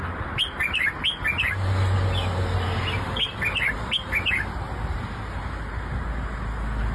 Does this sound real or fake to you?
real